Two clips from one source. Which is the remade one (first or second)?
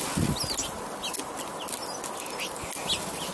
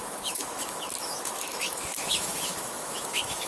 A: second